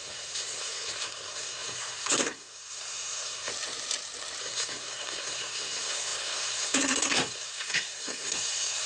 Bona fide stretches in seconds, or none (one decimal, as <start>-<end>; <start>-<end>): 3.5-4.4